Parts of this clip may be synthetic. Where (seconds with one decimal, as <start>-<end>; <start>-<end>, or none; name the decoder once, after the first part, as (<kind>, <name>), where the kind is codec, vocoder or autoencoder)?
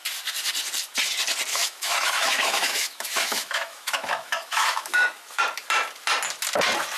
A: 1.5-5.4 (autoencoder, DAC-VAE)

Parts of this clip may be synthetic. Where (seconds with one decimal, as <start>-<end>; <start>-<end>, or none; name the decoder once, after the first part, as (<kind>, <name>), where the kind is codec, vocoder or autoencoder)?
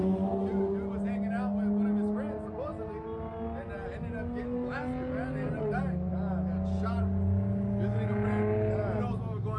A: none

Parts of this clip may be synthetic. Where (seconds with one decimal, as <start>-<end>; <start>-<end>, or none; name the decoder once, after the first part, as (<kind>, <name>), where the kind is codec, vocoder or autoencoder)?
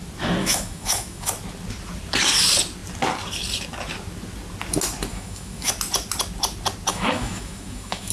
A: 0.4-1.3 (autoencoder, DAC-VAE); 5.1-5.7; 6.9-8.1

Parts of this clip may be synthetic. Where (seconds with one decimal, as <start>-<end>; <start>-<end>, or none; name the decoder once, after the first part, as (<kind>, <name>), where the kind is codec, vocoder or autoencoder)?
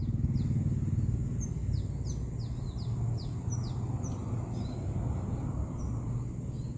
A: none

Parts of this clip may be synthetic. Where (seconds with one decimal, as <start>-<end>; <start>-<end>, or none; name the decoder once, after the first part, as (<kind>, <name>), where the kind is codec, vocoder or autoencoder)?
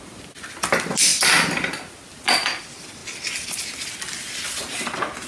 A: none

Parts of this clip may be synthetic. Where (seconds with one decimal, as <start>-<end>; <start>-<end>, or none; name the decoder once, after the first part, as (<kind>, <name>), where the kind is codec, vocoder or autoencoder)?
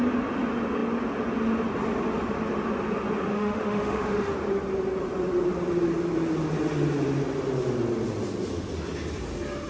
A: 3.3-4.3 (autoencoder, DAC-VAE)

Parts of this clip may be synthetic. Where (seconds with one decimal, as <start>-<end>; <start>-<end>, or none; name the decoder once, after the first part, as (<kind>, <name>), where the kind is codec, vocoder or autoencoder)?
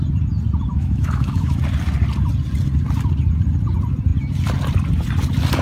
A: 0.7-1.6 (autoencoder, DAC-VAE)